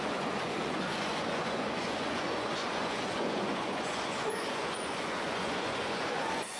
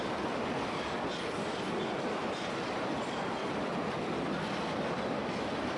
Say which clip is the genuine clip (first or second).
second